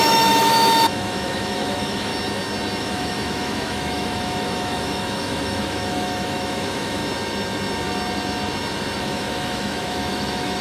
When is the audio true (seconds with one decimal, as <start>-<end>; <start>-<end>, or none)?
2.1-2.8; 7.0-9.0